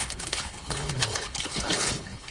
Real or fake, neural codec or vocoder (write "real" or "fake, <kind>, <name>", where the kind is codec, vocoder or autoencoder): fake, codec, HILCodec